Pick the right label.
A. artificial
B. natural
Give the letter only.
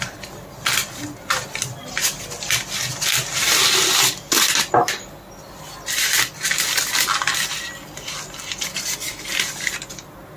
B